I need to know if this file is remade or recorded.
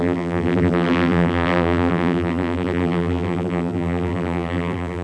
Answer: remade